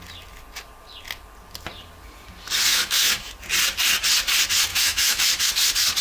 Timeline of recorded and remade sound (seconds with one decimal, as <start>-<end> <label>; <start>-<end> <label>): 0.0-2.7 recorded; 2.7-3.3 remade; 3.3-4.7 recorded; 4.7-5.5 remade; 5.5-6.0 recorded